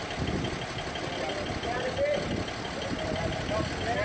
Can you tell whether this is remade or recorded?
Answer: recorded